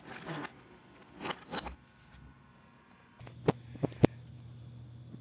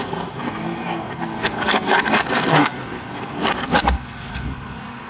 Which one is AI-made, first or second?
second